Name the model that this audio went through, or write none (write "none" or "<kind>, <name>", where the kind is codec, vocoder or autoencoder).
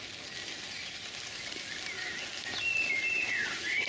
none